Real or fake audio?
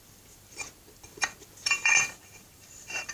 fake